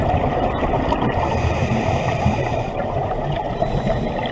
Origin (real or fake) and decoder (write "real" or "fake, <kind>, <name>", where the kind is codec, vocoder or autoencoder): fake, vocoder, BigVGAN v2